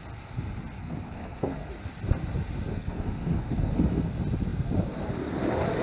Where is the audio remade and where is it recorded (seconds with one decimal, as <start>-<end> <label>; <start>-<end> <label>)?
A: 0.0-0.8 recorded; 0.8-1.7 remade; 1.7-2.7 recorded; 2.7-4.1 remade; 4.1-5.8 recorded